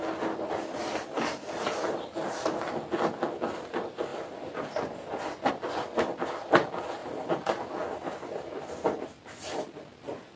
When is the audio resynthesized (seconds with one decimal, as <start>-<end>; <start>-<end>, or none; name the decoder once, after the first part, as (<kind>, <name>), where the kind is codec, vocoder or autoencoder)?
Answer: none